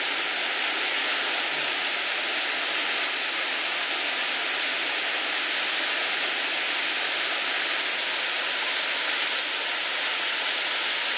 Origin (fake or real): real